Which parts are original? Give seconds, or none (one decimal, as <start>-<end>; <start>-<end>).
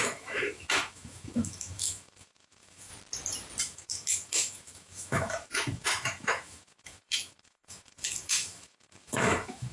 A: 2.9-3.6